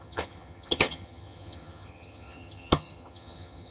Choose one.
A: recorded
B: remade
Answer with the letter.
B